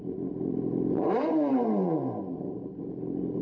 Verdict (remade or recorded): remade